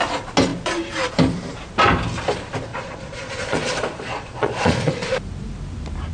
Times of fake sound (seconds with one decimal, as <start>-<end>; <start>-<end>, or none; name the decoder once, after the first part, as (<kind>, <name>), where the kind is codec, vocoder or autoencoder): 2.7-4.9 (vocoder, Vocos)